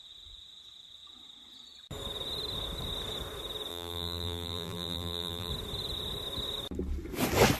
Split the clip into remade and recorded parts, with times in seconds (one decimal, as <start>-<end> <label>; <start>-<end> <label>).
0.0-3.7 recorded; 3.7-5.5 remade; 5.5-7.6 recorded